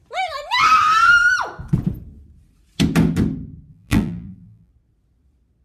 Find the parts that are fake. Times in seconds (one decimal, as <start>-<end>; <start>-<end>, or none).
3.7-4.7